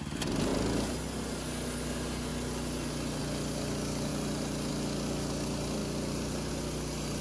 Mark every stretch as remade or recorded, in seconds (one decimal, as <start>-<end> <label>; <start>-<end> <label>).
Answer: 0.0-5.8 recorded; 5.8-6.5 remade; 6.5-7.2 recorded